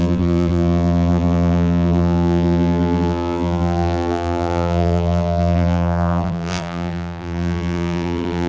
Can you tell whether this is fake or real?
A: fake